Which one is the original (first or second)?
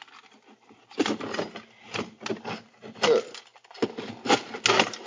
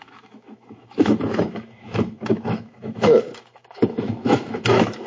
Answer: first